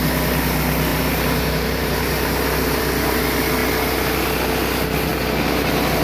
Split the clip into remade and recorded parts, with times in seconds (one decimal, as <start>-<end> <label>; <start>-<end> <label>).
0.0-0.9 recorded; 0.9-2.8 remade; 2.8-5.1 recorded; 5.1-6.0 remade